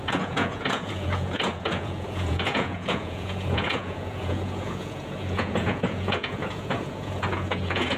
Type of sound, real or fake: fake